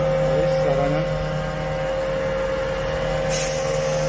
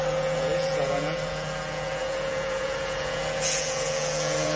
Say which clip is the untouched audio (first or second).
first